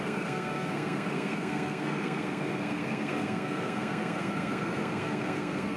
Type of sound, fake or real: fake